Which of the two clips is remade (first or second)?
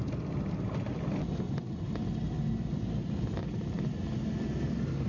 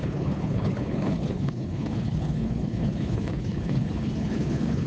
second